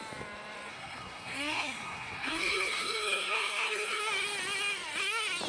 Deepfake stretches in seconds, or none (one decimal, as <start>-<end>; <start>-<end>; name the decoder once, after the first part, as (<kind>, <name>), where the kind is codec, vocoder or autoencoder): 0.7-4.0 (codec, SNAC)